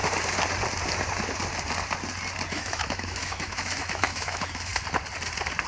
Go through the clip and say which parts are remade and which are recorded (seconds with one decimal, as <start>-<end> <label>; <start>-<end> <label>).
0.0-2.5 recorded; 2.5-4.7 remade; 4.7-5.7 recorded

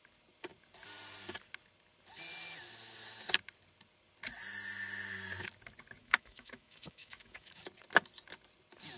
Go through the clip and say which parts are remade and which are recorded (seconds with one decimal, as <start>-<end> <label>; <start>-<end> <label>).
0.0-6.0 recorded; 6.0-7.6 remade; 7.6-9.0 recorded